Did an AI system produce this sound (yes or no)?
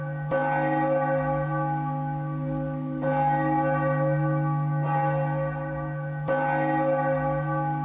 no